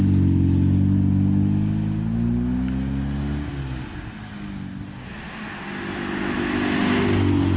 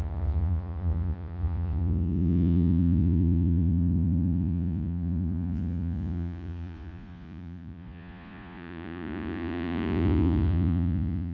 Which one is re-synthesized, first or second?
second